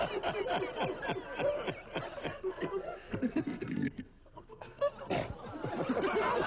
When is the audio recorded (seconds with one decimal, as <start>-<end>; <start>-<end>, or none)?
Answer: 0.0-2.3; 4.9-6.5